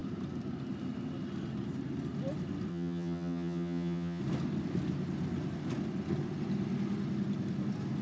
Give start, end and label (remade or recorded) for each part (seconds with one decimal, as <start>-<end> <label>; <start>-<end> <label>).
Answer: 0.0-2.7 recorded; 2.7-4.2 remade; 4.2-8.0 recorded